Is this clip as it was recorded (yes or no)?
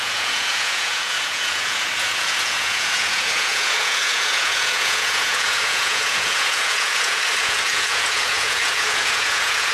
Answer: no